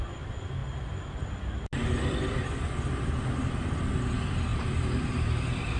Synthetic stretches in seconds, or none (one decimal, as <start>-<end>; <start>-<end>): 4.5-5.8

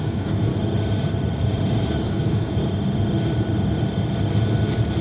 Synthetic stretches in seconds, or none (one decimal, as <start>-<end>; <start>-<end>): 0.0-0.5; 2.1-2.6

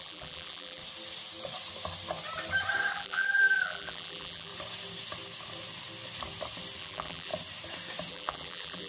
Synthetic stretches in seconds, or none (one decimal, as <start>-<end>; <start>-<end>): 0.0-0.8; 2.9-4.5; 6.8-7.3; 8.1-8.9

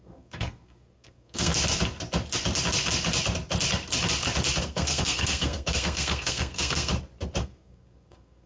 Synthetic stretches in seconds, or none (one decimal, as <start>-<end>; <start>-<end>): 0.0-1.5; 4.6-6.9; 7.4-8.5

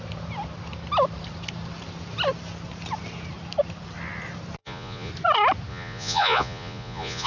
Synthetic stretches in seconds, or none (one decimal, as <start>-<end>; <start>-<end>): 4.6-5.1; 5.7-7.3